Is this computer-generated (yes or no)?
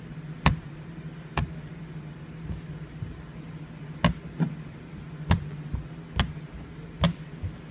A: no